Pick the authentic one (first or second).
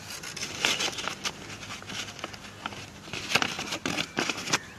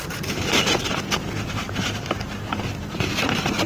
first